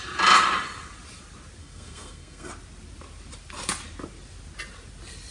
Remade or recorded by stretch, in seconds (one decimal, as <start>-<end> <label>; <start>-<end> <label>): 0.0-1.6 recorded; 1.6-2.5 remade; 2.5-5.3 recorded